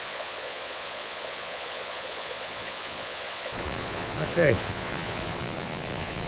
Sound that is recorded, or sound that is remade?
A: remade